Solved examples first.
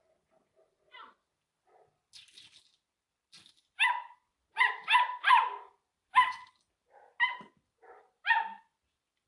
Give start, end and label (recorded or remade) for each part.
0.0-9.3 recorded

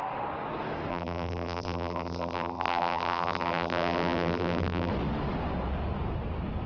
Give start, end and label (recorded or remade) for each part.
0.0-0.9 recorded; 0.9-4.9 remade; 4.9-6.7 recorded

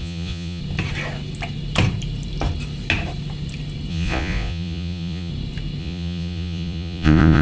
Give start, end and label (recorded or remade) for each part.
0.0-0.6 remade; 0.6-3.9 recorded; 3.9-5.3 remade; 5.3-5.8 recorded; 5.8-7.4 remade